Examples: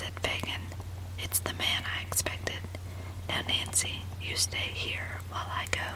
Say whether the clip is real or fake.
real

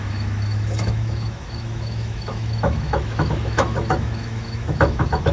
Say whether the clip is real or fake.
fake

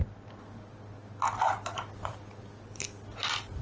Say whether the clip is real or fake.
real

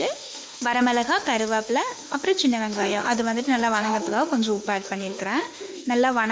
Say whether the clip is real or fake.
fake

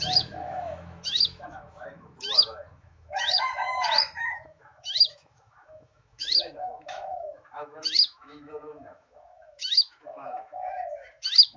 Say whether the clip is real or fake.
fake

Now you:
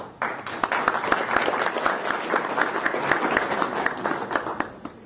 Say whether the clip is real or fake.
real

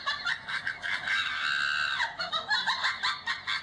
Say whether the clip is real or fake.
real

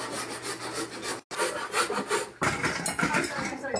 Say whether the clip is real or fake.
real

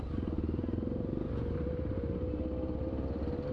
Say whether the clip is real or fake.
real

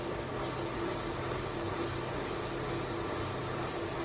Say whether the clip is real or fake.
real